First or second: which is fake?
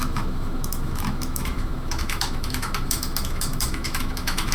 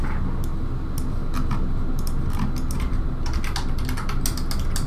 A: first